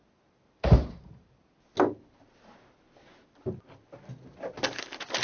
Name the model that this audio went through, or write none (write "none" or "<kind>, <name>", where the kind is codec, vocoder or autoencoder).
none